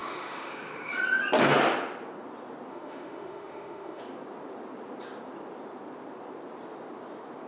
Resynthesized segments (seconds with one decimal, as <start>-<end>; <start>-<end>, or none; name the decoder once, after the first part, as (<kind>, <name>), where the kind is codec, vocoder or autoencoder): 0.0-0.9 (autoencoder, DAC-VAE); 2.7-4.0